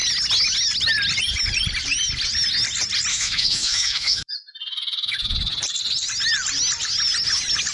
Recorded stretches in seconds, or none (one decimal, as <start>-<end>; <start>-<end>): 0.0-3.1; 4.3-7.7